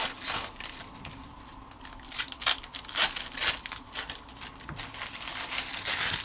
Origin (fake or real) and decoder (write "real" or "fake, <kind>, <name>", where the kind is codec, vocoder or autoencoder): real